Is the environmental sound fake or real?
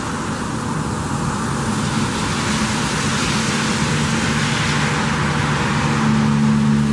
real